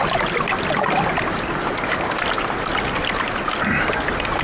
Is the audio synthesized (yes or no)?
no